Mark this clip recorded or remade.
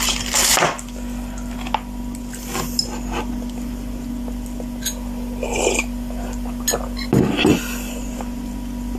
recorded